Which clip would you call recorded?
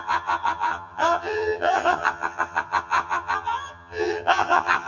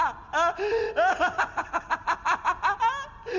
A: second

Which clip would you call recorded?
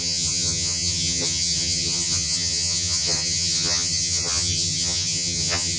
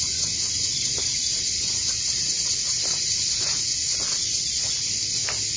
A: second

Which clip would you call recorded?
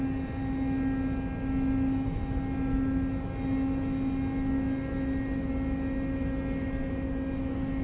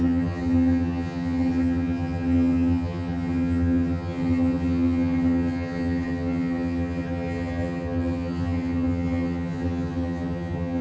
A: first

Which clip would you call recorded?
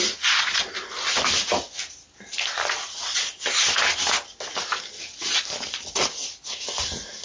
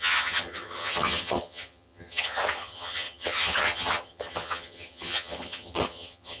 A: first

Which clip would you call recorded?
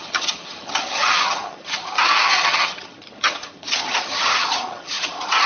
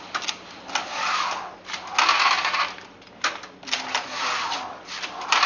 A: second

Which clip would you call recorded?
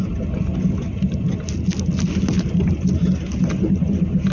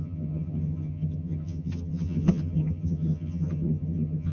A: first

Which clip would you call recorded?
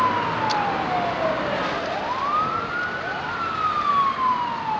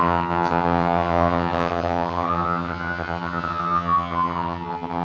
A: first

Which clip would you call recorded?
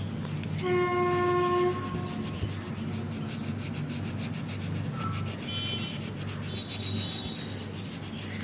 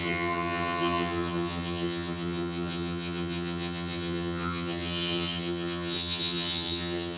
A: first